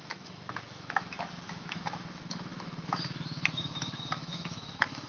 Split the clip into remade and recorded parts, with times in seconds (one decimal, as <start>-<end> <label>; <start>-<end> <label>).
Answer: 0.0-5.1 remade